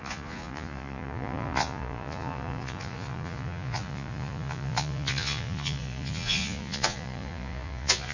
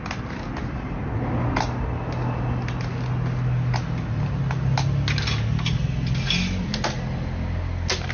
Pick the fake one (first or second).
first